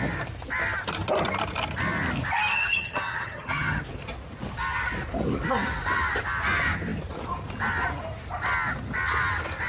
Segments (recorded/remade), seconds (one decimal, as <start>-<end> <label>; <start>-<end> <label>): 0.0-2.5 recorded; 2.5-3.8 remade; 3.8-9.7 recorded